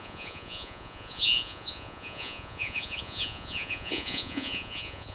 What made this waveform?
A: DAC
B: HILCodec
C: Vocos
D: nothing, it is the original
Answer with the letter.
C